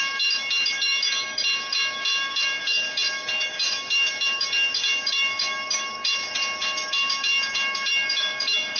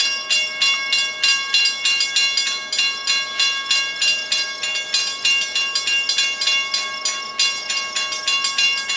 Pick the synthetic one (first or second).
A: first